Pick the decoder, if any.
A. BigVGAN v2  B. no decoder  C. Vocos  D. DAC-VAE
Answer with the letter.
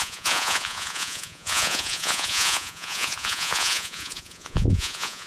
C